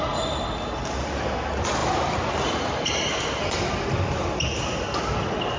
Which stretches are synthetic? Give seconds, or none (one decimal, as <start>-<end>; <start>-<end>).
none